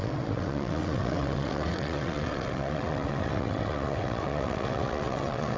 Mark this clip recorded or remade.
remade